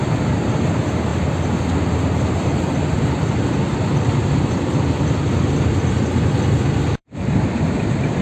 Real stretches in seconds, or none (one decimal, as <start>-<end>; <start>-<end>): 0.0-7.0